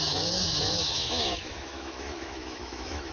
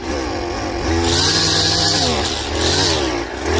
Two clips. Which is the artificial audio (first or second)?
first